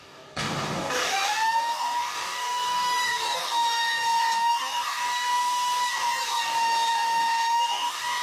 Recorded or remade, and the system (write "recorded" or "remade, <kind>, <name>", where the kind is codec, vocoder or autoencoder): remade, codec, DAC